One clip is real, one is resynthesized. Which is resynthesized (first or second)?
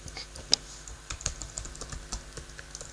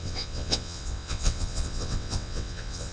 second